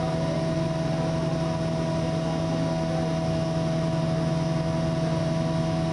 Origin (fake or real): real